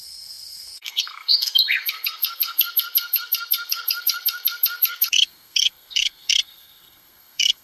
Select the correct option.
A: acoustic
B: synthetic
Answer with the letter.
B